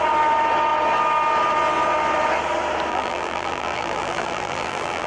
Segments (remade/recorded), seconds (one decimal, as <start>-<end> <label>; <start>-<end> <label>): 0.0-2.9 recorded; 2.9-5.1 remade